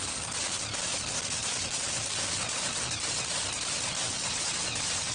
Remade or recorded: remade